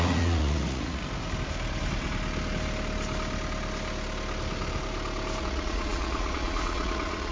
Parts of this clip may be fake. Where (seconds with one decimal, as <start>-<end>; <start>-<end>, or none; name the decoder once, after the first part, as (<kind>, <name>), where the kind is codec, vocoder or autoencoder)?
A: 0.0-1.0 (vocoder, Vocos); 5.4-7.3